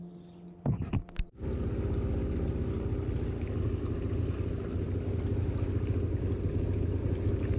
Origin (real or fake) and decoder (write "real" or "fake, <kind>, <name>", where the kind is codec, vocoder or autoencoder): real